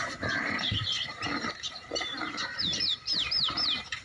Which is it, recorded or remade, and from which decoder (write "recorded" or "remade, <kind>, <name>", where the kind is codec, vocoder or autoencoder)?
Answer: remade, vocoder, BigVGAN v2